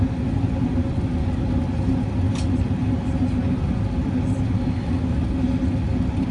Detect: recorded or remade recorded